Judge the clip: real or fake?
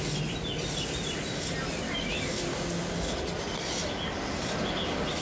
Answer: real